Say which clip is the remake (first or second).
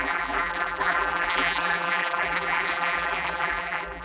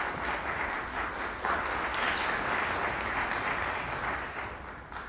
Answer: first